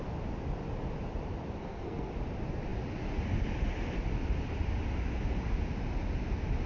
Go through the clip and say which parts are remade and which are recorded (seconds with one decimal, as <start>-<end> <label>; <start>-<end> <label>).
0.0-1.6 recorded; 1.6-2.1 remade; 2.1-6.7 recorded